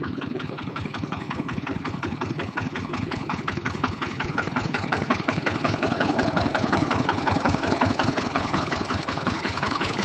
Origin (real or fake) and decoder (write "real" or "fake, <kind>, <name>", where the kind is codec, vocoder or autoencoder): fake, codec, HILCodec